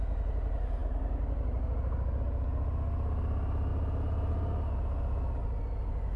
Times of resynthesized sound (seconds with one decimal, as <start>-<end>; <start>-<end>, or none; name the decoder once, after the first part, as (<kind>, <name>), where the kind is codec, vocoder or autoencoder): none